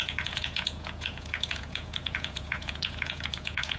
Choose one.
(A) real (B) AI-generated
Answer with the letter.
B